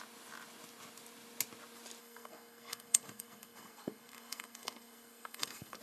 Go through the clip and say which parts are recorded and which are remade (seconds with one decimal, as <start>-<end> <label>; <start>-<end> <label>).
0.0-2.0 recorded; 2.0-5.8 remade